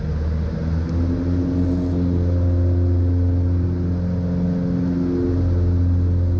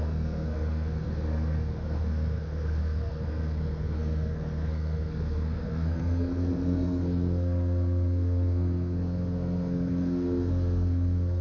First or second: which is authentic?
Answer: first